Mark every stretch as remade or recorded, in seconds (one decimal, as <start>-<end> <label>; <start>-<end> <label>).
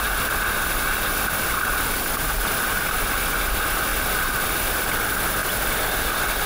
0.0-6.5 recorded